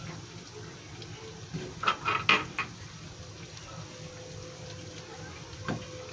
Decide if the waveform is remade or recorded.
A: recorded